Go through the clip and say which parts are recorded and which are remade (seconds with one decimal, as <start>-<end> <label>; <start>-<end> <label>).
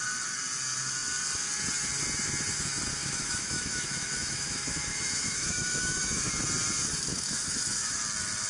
0.0-3.0 recorded; 3.0-6.3 remade; 6.3-7.1 recorded; 7.1-8.0 remade; 8.0-8.5 recorded